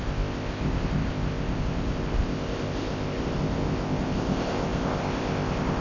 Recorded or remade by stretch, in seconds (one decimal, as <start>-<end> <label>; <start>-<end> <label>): 0.0-5.8 remade